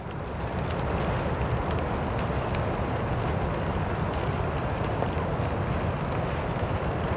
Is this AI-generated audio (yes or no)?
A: no